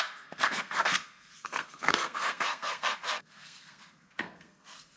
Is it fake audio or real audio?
fake